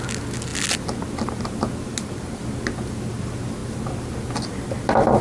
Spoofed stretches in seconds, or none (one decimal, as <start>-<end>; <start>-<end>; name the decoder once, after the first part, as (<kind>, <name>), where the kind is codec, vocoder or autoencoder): none